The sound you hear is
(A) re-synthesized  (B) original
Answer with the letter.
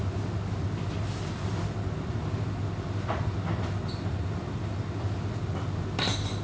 B